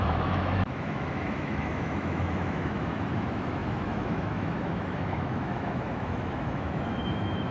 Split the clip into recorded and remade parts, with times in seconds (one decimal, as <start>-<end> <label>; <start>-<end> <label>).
0.0-7.5 remade